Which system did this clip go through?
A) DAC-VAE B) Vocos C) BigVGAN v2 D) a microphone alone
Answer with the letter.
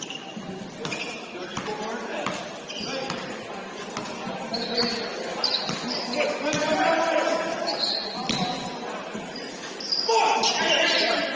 D